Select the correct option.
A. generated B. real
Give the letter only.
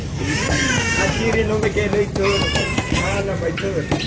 B